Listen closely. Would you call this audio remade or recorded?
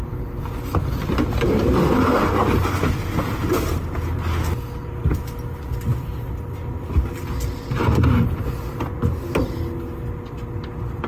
recorded